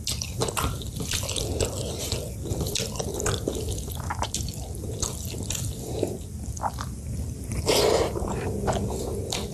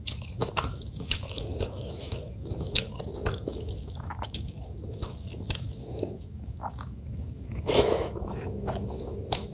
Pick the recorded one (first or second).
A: first